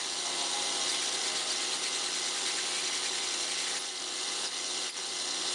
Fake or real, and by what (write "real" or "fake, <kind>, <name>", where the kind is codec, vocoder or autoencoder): real